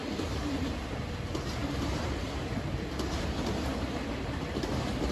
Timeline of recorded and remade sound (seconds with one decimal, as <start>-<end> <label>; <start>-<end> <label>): 0.0-5.1 recorded